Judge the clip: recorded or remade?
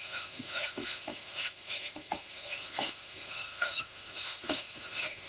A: remade